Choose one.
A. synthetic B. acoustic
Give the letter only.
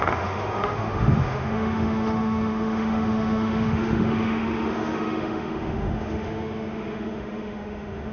A